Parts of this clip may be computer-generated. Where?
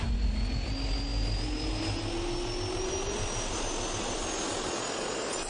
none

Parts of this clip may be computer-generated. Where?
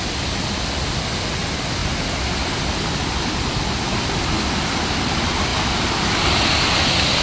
none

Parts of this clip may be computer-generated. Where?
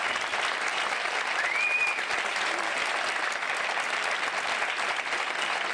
none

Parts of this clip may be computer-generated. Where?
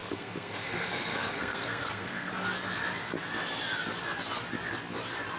0.0-2.3 (codec, SNAC)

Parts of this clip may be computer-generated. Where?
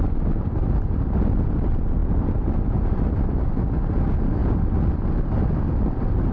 none